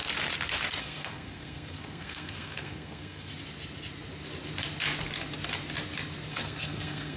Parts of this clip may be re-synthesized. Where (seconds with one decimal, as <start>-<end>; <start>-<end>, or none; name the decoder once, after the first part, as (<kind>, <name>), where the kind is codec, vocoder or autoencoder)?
0.8-3.3 (codec, SNAC); 6.3-7.2

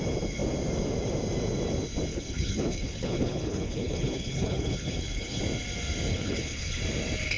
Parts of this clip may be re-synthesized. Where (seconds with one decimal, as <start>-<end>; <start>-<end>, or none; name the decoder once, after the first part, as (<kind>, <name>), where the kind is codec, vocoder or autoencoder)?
2.1-5.4 (codec, HILCodec); 6.1-6.8

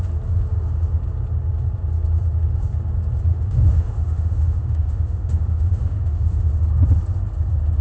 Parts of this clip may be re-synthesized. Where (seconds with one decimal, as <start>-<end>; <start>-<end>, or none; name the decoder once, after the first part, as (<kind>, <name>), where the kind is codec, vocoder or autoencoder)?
3.3-6.5 (autoencoder, DAC-VAE)